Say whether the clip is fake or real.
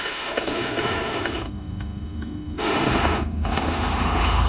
fake